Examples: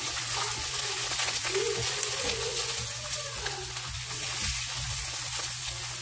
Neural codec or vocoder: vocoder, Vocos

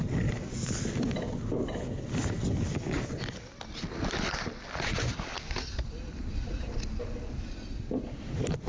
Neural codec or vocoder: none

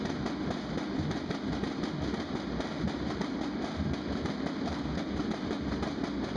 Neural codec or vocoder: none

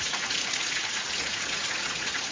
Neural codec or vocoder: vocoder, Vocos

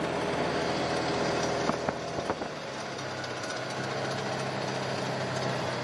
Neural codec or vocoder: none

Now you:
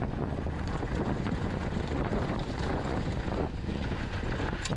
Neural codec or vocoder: vocoder, Vocos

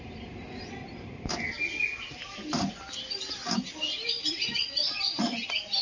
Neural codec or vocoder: none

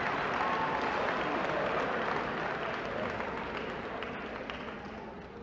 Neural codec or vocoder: none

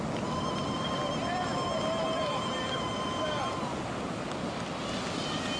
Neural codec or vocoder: none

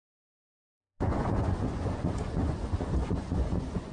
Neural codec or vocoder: vocoder, Vocos